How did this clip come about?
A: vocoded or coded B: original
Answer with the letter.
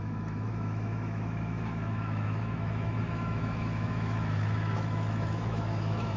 A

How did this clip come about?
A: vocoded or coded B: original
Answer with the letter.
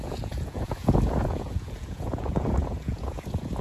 A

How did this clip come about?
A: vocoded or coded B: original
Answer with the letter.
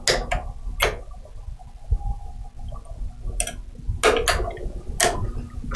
B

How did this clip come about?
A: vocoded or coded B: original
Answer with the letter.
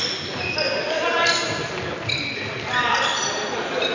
B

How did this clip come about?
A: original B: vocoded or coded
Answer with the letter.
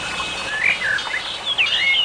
A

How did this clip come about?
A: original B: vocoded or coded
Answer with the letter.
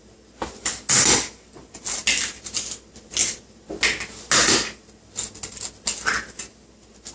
A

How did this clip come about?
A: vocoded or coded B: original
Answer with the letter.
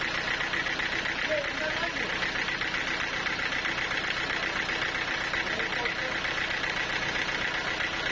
B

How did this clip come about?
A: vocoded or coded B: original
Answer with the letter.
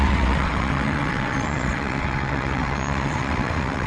A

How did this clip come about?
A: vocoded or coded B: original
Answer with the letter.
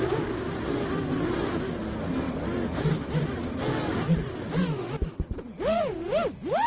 B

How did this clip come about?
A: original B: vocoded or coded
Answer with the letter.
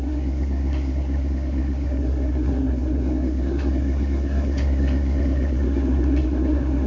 B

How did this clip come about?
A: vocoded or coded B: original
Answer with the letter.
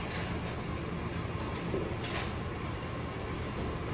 B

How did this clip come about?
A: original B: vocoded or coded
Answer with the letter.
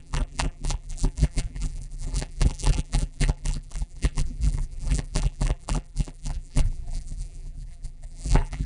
B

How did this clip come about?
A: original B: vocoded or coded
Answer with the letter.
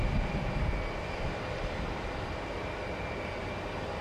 A